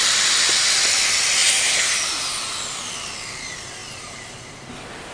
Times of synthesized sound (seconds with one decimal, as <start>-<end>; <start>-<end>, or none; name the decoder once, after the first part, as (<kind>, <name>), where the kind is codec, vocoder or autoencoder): none